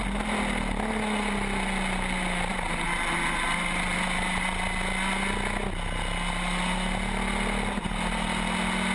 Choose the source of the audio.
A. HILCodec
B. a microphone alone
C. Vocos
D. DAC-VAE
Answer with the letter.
B